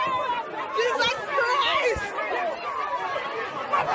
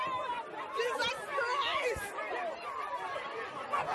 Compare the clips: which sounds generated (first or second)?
second